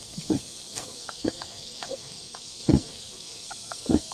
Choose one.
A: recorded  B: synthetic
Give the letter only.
B